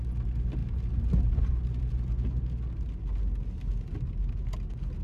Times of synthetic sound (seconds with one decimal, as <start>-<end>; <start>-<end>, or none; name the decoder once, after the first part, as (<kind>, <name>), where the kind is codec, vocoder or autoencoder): none